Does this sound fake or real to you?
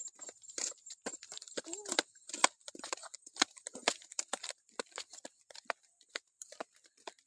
real